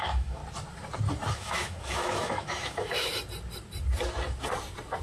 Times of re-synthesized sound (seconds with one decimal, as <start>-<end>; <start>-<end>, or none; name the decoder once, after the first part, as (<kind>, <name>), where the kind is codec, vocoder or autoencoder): 0.0-0.4 (autoencoder, DAC-VAE); 1.3-3.1